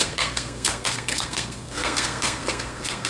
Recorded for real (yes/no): no